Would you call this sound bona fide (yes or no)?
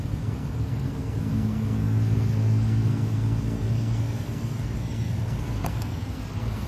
no